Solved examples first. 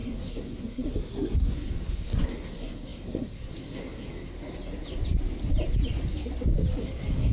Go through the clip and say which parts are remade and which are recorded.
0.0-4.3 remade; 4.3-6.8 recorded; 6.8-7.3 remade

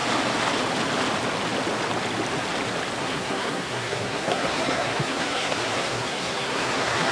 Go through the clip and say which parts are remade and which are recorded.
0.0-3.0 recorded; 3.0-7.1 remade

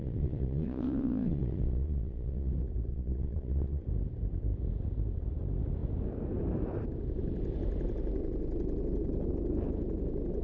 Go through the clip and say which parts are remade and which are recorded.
0.0-2.5 remade; 2.5-2.9 recorded; 2.9-3.8 remade; 3.8-10.4 recorded

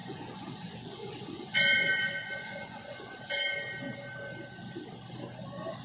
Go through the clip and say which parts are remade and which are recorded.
0.0-3.2 remade; 3.2-5.8 recorded

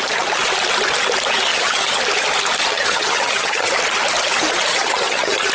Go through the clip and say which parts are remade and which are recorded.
0.0-1.5 recorded; 1.5-2.0 remade; 2.0-2.7 recorded; 2.7-3.7 remade; 3.7-4.7 recorded; 4.7-5.5 remade

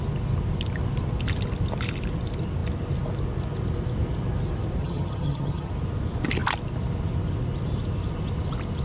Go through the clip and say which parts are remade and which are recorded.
0.0-4.8 recorded; 4.8-5.7 remade; 5.7-8.8 recorded

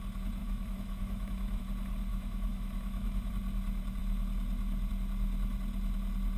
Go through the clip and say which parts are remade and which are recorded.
0.0-0.4 recorded; 0.4-1.6 remade; 1.6-2.1 recorded; 2.1-3.3 remade; 3.3-6.4 recorded

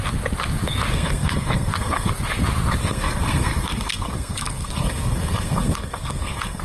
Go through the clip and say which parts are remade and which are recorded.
0.0-0.9 recorded; 0.9-2.1 remade; 2.1-2.8 recorded; 2.8-6.6 remade